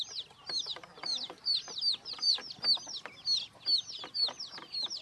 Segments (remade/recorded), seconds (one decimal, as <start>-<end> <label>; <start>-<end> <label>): 0.0-0.7 recorded; 0.7-2.4 remade; 2.4-3.7 recorded; 3.7-5.0 remade